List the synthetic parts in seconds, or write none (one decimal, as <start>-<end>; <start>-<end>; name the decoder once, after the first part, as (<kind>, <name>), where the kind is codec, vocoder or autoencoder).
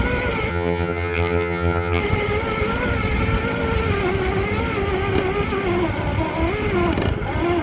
0.5-2.0 (vocoder, HiFi-GAN)